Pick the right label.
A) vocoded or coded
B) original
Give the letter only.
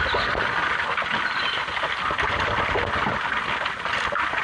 B